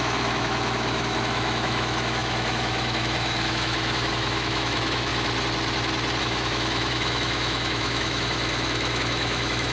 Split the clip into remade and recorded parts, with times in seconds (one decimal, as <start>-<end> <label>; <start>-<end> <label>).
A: 0.0-5.1 remade; 5.1-6.2 recorded; 6.2-9.7 remade